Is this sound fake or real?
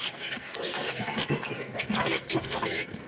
fake